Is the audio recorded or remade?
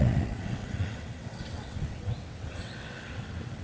remade